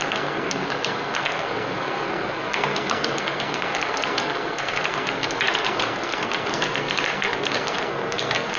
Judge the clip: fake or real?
fake